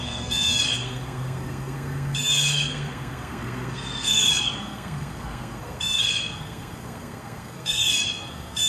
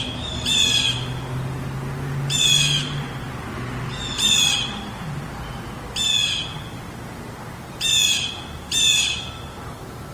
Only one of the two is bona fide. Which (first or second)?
second